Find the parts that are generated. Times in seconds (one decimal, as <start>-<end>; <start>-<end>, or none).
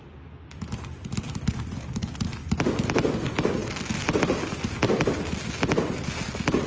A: none